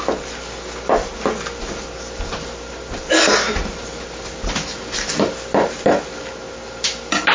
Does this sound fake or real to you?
real